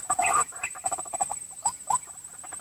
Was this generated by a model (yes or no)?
yes